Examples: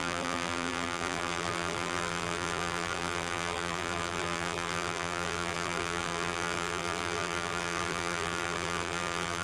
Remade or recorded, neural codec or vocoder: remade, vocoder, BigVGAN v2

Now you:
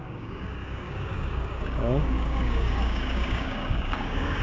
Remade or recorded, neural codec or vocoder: remade, codec, DAC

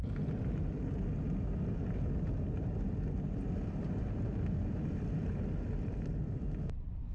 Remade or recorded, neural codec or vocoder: remade, vocoder, BigVGAN v2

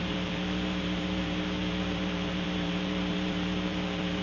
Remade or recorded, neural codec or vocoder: remade, vocoder, BigVGAN v2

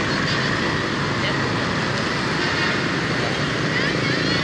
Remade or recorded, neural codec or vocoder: recorded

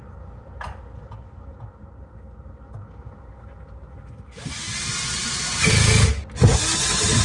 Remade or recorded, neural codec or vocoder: recorded